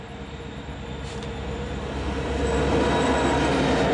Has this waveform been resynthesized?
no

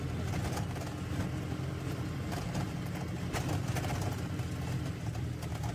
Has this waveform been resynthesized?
no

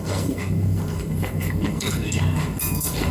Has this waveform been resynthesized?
yes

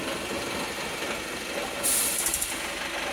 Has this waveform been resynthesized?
no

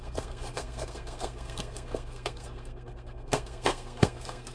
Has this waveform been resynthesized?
yes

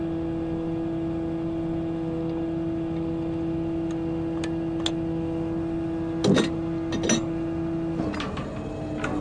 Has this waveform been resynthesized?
no